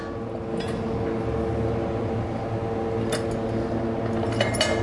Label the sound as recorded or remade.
recorded